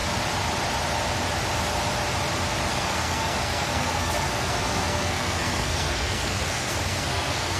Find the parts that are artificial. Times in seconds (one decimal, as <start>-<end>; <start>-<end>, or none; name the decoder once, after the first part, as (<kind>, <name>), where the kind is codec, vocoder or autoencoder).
2.7-7.6 (codec, SNAC)